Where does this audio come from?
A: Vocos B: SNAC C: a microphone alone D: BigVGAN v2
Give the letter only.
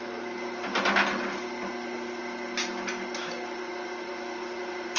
C